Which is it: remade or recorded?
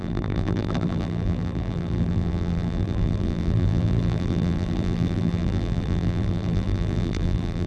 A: remade